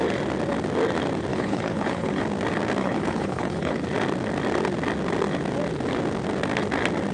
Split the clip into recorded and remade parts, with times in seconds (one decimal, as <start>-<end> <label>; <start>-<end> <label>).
0.0-1.3 recorded; 1.3-2.2 remade; 2.2-2.8 recorded; 2.8-3.8 remade; 3.8-7.1 recorded